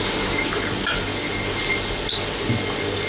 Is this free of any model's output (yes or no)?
yes